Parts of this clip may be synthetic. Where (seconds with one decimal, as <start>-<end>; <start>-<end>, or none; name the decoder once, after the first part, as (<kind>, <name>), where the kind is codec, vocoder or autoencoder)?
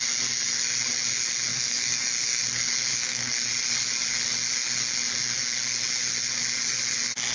1.5-2.4 (autoencoder, DAC-VAE); 2.9-3.5